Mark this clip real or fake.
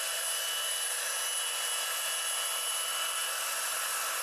real